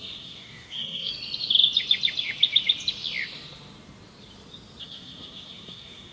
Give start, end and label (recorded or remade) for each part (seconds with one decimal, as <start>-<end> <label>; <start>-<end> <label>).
0.0-1.1 remade; 1.1-4.8 recorded; 4.8-6.1 remade